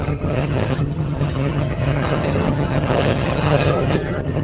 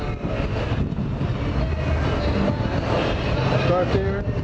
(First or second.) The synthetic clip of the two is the first